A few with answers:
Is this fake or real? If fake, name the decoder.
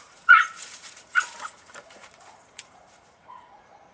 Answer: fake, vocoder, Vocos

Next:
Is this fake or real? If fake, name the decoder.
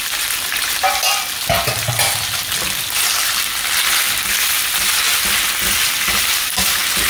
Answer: real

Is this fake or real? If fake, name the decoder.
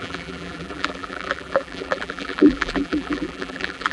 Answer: fake, vocoder, BigVGAN v2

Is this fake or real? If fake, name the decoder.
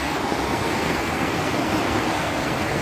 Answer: fake, codec, SNAC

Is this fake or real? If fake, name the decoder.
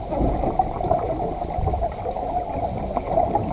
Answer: real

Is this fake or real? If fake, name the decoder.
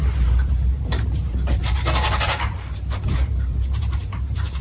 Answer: fake, vocoder, BigVGAN v2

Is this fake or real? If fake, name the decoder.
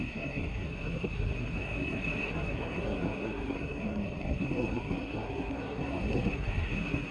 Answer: fake, codec, SNAC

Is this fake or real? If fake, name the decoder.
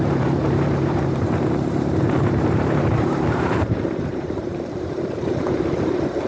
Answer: fake, vocoder, BigVGAN v2